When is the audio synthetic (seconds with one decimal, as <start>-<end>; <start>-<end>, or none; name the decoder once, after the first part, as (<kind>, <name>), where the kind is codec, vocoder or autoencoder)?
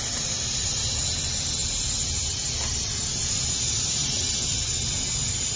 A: none